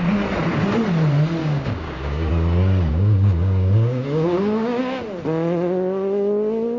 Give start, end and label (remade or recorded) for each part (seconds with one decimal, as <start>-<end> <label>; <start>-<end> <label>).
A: 0.0-1.4 recorded; 1.4-2.3 remade; 2.3-2.9 recorded; 2.9-4.8 remade; 4.8-6.8 recorded